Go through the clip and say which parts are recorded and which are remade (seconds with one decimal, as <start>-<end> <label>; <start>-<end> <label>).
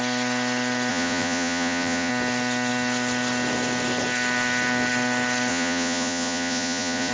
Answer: 0.0-0.9 recorded; 0.9-2.1 remade; 2.1-5.5 recorded; 5.5-7.1 remade